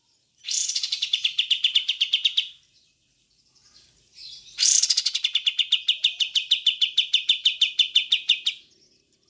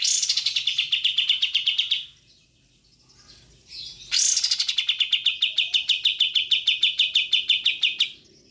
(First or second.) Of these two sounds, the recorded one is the second